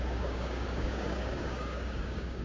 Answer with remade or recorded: remade